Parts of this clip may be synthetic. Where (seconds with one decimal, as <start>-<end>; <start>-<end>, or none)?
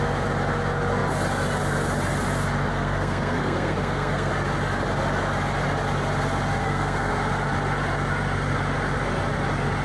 2.7-4.3; 6.6-7.1